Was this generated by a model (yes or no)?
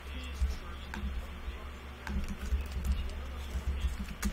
no